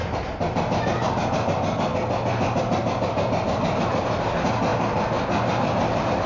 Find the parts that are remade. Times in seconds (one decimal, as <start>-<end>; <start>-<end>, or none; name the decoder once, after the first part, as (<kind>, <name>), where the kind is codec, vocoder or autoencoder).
none